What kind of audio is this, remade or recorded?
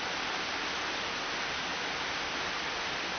recorded